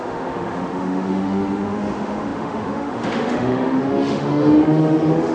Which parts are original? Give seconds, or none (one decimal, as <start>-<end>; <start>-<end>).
none